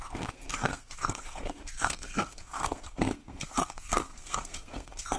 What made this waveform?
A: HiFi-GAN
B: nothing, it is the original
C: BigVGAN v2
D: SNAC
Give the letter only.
D